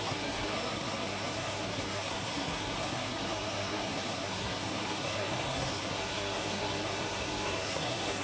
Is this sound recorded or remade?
remade